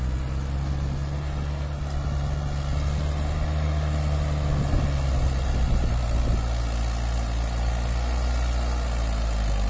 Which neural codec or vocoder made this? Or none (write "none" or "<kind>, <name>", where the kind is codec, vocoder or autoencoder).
none